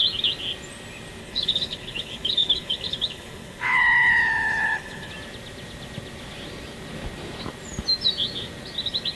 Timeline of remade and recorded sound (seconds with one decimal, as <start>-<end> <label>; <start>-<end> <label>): 0.0-1.2 recorded; 1.2-5.1 remade; 5.1-9.2 recorded